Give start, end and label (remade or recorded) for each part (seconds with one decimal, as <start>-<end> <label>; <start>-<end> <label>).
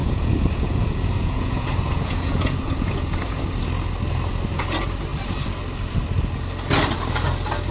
0.0-3.4 remade; 3.4-7.7 recorded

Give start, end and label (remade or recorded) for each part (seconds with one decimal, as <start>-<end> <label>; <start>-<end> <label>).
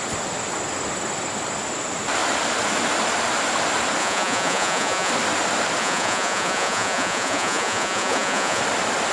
0.0-4.0 recorded; 4.0-5.1 remade; 5.1-5.8 recorded; 5.8-8.6 remade; 8.6-9.1 recorded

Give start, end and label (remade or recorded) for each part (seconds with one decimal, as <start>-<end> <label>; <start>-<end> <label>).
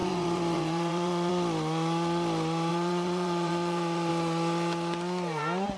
0.0-1.3 remade; 1.3-2.7 recorded; 2.7-4.1 remade; 4.1-5.8 recorded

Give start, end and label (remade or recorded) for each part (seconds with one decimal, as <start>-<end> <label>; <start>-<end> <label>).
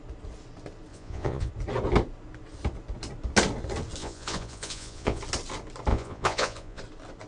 0.0-0.9 recorded; 0.9-1.5 remade; 1.5-4.0 recorded; 4.0-5.2 remade; 5.2-5.9 recorded; 5.9-6.8 remade; 6.8-7.3 recorded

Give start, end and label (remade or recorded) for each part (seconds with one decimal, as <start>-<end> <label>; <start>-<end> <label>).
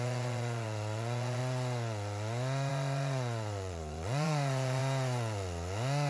0.0-1.4 remade; 1.4-2.7 recorded; 2.7-4.8 remade; 4.8-6.1 recorded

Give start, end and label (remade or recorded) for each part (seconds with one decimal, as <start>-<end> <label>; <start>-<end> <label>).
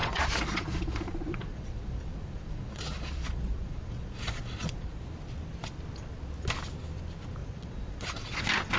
0.0-5.0 remade; 5.0-7.4 recorded; 7.4-8.4 remade; 8.4-8.8 recorded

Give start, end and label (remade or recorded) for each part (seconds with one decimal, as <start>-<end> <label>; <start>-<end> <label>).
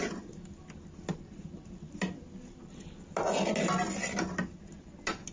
0.0-5.3 recorded